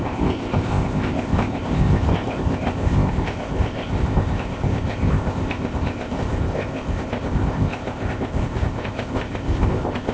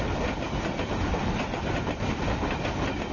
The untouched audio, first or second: second